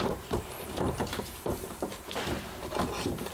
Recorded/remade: remade